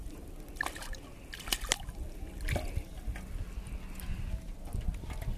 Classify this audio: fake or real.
real